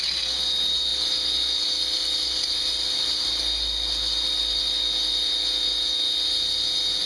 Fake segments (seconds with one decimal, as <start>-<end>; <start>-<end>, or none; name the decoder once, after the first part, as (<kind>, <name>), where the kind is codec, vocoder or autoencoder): none